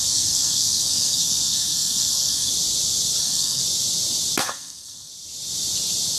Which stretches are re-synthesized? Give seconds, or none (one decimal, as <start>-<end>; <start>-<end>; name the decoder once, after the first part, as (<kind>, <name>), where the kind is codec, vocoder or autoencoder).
0.0-2.5 (codec, SNAC); 3.2-3.6; 4.4-5.1